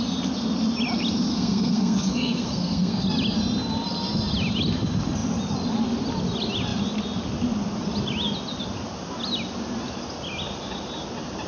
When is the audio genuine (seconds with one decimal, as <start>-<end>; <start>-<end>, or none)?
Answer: 0.0-1.3; 3.0-11.5